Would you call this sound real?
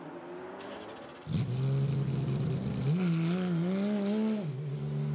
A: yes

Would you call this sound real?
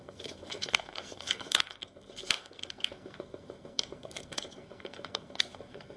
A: no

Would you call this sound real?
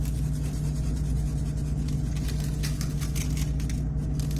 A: yes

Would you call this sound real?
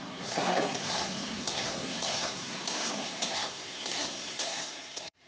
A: no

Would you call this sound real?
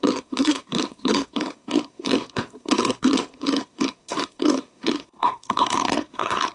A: no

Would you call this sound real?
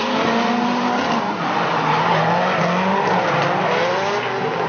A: yes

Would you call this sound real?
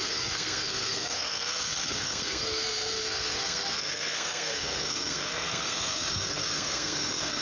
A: no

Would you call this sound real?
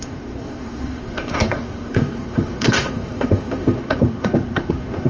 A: no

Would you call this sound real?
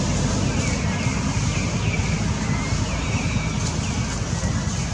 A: yes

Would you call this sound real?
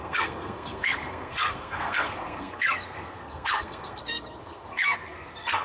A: no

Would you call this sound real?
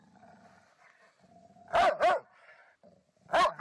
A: yes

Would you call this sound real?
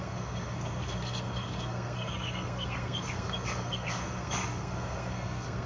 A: no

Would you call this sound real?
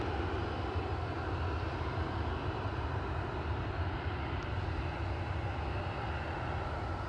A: yes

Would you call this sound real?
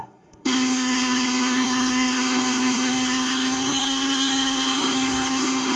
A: no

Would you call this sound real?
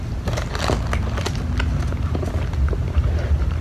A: yes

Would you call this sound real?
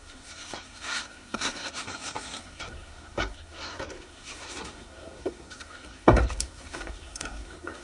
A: no